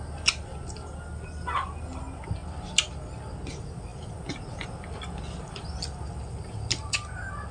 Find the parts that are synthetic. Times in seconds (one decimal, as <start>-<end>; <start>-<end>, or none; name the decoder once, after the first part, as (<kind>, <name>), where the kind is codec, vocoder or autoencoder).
none

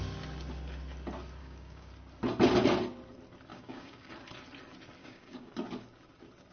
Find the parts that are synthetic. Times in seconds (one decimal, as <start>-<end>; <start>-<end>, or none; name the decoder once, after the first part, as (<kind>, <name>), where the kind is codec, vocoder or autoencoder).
1.4-1.9 (codec, DAC); 3.5-4.1; 5.0-5.5